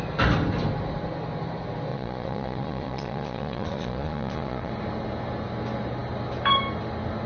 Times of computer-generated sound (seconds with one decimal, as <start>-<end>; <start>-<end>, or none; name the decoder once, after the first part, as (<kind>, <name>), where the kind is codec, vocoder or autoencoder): 1.9-4.7 (vocoder, Vocos)